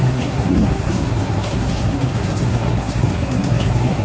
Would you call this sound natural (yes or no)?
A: no